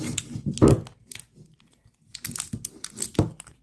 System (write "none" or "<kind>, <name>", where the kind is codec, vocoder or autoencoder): none